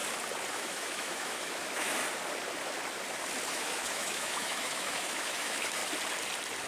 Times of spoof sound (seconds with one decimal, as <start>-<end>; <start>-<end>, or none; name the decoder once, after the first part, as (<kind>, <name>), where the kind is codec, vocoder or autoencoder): 0.5-2.0 (autoencoder, DAC-VAE); 3.5-5.8